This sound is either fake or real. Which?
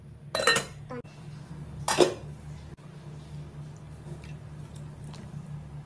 real